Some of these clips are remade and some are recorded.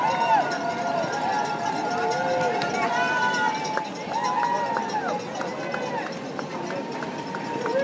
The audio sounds recorded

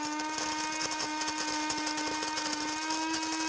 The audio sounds recorded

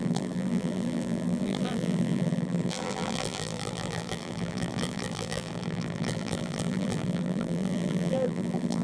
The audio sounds remade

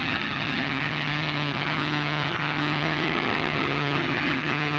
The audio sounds remade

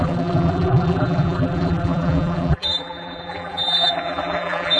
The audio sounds remade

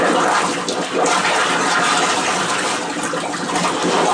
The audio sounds recorded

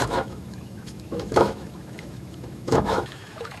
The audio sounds remade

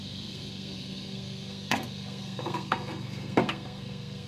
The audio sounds remade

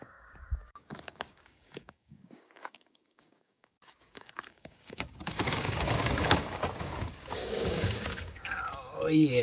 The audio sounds remade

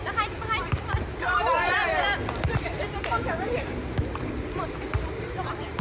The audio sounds remade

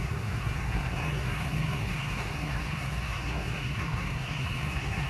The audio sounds remade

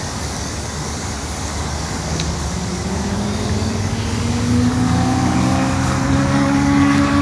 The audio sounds remade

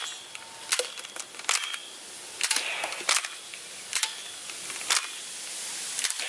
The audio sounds recorded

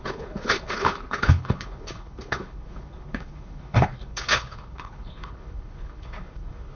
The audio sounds remade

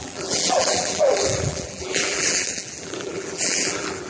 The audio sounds remade